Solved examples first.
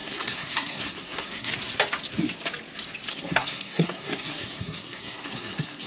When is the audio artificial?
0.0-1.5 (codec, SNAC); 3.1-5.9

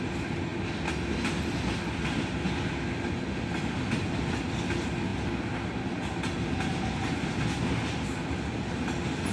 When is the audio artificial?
none